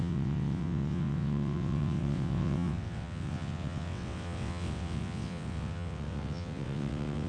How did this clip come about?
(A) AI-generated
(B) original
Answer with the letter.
A